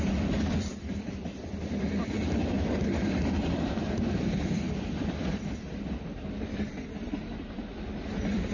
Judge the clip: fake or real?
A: fake